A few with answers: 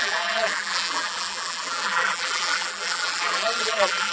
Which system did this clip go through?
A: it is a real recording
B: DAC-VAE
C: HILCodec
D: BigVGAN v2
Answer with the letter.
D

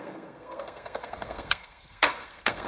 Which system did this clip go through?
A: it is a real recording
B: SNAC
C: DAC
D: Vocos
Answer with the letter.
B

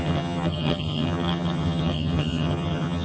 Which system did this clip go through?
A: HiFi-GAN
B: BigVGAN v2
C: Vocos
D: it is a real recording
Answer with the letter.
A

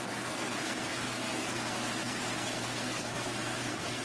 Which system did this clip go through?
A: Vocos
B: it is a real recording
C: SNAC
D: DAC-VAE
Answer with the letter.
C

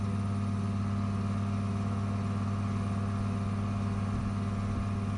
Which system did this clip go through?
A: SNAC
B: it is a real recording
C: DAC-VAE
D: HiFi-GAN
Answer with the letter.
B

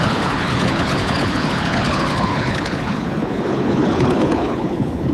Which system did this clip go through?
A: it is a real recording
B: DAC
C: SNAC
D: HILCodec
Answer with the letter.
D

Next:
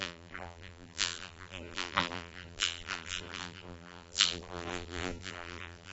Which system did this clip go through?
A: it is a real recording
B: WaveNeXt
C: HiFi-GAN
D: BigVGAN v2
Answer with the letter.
D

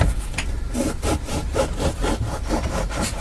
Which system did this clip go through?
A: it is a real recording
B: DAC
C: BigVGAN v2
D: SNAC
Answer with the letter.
C